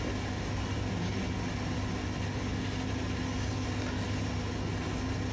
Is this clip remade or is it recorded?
recorded